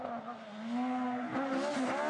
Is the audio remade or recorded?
recorded